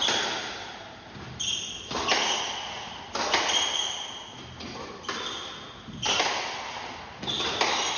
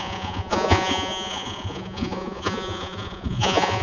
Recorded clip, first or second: first